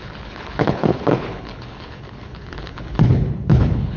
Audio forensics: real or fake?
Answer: fake